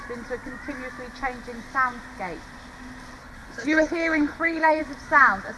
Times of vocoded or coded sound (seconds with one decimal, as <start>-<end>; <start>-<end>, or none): 3.2-4.8